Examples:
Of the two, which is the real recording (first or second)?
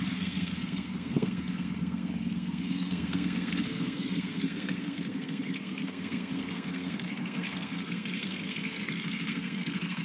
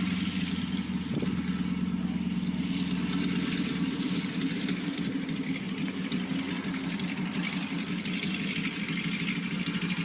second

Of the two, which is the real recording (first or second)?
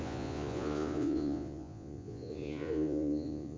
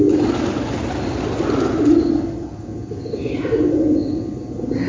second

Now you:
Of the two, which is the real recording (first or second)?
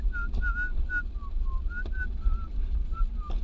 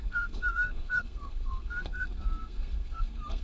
first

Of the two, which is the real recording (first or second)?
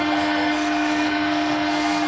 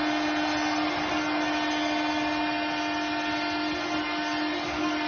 second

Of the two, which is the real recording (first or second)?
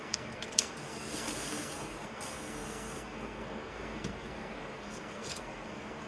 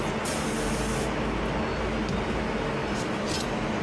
second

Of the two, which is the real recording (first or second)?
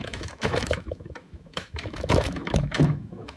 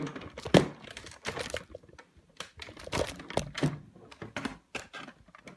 second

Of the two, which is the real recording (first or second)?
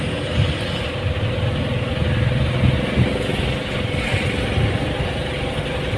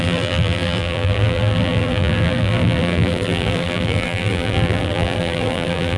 first